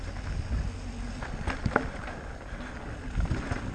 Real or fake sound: real